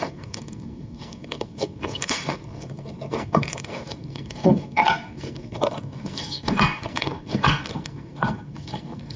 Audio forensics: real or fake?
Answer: fake